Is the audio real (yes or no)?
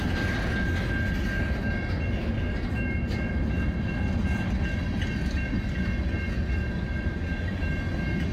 yes